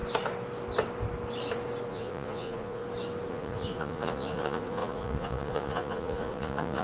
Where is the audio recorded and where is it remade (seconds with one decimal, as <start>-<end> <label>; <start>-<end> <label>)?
0.0-1.9 recorded; 1.9-2.8 remade; 2.8-3.3 recorded; 3.3-6.8 remade

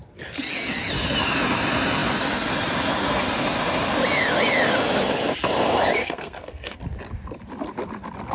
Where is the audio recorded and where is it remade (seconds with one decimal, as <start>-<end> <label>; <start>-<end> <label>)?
0.0-6.0 recorded; 6.0-6.8 remade; 6.8-8.3 recorded

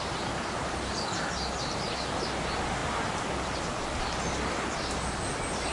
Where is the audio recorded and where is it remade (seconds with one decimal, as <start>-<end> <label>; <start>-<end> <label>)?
0.0-2.8 recorded; 2.8-3.6 remade; 3.6-5.7 recorded

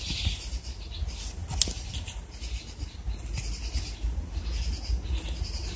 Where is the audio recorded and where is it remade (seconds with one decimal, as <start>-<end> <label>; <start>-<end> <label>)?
0.0-5.8 recorded

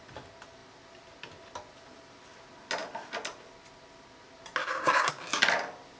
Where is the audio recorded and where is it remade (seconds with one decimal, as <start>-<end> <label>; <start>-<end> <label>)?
0.0-4.6 recorded; 4.6-5.1 remade; 5.1-6.0 recorded